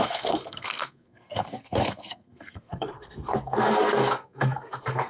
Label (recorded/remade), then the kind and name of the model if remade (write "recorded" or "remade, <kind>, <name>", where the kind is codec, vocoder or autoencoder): remade, codec, SNAC